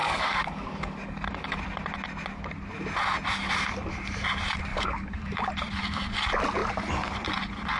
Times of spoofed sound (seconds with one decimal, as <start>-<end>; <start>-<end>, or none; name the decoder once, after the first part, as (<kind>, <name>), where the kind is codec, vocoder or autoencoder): 0.0-1.6 (codec, DAC); 4.7-5.5